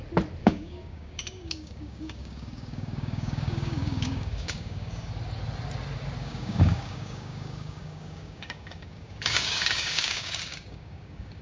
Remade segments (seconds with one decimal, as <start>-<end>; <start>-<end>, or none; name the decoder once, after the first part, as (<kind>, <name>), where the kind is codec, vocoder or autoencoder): 0.4-5.1 (codec, DAC); 6.2-11.4